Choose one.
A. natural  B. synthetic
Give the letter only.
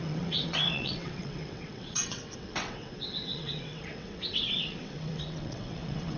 B